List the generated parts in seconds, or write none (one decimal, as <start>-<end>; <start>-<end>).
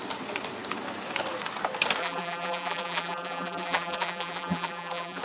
2.0-5.2